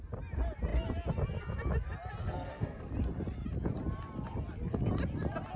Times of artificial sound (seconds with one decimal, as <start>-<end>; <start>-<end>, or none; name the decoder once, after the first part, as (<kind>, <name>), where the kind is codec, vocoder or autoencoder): 2.2-2.9 (codec, SNAC)